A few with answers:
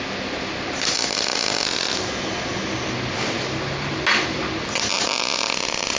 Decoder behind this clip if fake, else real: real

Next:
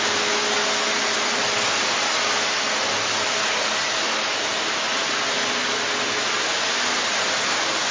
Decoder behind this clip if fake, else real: real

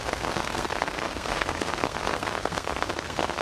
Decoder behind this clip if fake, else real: fake, codec, SNAC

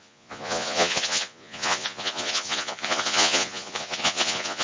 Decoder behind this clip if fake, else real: fake, vocoder, Vocos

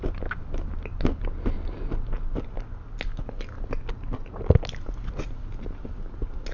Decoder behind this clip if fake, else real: real